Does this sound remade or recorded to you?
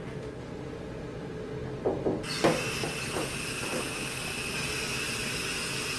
recorded